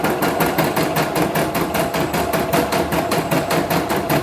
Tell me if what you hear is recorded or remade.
recorded